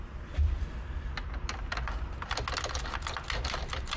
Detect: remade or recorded recorded